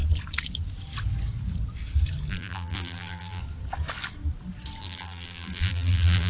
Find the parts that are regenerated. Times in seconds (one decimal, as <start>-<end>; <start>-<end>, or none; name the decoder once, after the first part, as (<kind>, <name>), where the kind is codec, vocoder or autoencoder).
2.3-3.4 (vocoder, BigVGAN v2); 4.8-6.3